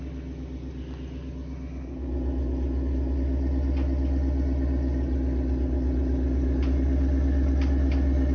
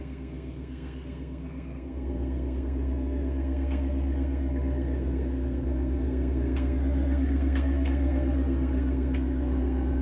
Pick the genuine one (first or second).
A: first